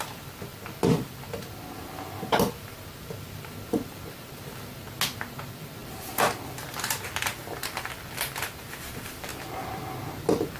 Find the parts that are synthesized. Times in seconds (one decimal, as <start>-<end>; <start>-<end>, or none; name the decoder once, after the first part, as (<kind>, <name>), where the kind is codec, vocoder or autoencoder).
none